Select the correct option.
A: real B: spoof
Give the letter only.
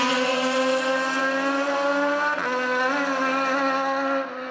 A